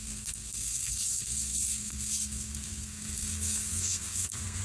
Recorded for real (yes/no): no